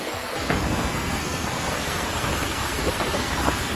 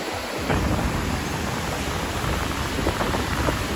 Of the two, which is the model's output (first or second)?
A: first